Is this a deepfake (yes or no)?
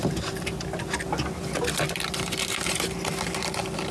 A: no